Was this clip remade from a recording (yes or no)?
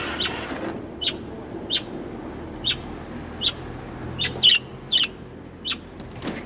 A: no